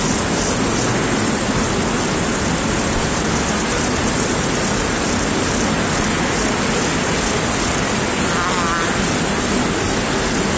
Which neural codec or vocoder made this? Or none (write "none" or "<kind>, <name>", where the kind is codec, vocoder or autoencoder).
none